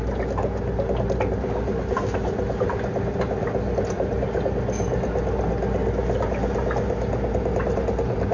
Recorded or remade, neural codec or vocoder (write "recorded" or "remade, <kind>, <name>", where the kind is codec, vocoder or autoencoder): recorded